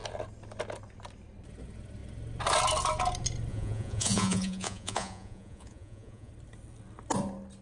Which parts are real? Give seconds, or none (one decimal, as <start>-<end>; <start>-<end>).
0.0-3.5; 6.3-7.6